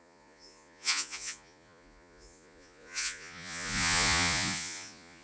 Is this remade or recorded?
remade